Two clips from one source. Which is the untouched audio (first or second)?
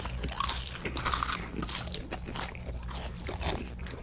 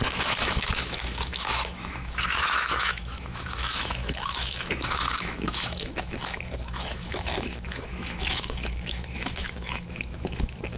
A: first